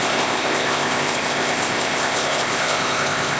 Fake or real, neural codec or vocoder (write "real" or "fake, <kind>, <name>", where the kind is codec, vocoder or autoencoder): fake, codec, ZipCodec